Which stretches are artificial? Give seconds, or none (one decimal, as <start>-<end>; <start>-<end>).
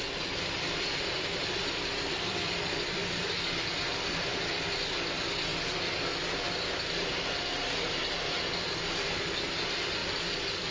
0.0-3.0; 3.6-5.5; 9.6-10.0